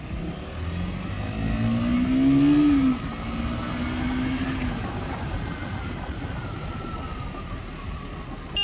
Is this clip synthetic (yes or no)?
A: no